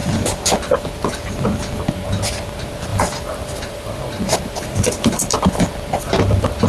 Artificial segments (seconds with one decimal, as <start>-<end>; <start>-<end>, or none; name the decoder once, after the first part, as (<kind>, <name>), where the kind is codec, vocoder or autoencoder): 2.9-5.6 (vocoder, BigVGAN v2)